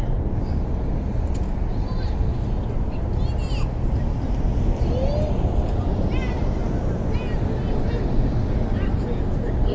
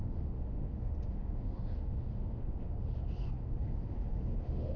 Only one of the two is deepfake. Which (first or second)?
second